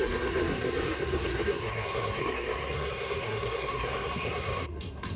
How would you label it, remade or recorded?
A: remade